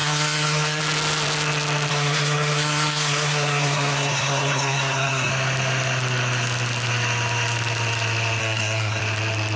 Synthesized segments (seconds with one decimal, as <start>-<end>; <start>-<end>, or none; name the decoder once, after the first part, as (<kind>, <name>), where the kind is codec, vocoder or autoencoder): 0.0-0.8 (codec, SNAC); 1.9-5.3; 8.4-9.0